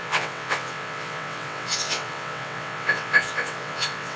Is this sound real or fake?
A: fake